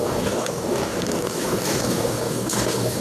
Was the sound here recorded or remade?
remade